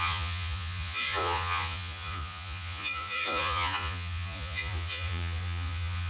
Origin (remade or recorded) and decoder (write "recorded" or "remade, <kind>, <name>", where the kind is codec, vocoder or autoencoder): remade, vocoder, Vocos